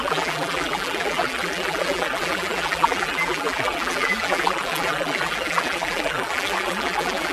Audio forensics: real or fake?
fake